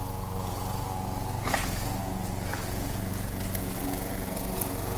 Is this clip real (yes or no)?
no